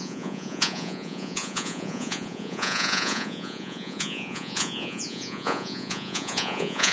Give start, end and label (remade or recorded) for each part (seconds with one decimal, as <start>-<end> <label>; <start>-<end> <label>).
0.0-6.9 remade